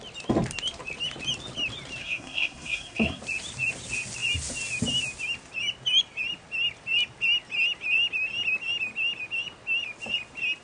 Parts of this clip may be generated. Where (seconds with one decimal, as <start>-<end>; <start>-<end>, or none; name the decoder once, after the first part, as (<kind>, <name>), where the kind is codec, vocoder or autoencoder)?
2.0-3.2 (codec, SNAC)